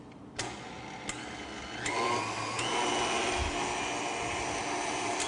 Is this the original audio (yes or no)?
yes